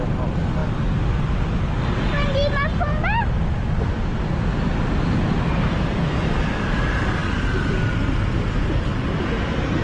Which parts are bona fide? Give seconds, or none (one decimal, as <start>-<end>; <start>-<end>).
0.0-9.8